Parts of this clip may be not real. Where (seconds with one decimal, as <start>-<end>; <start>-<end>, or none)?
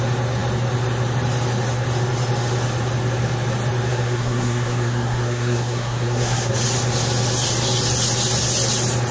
3.9-6.5